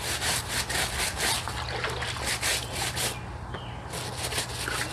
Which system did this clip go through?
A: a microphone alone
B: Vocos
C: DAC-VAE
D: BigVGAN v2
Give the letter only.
A